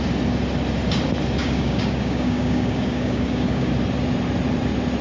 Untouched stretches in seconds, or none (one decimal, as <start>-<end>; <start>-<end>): 0.0-1.4; 3.7-5.0